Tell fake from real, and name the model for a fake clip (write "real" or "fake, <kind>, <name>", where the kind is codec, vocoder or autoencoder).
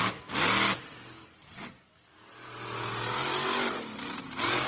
real